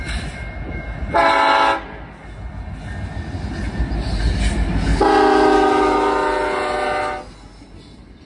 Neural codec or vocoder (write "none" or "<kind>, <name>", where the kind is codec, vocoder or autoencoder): none